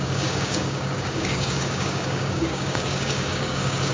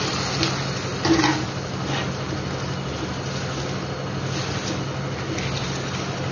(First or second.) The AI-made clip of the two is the first